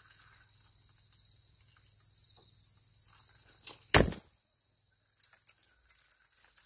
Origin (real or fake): real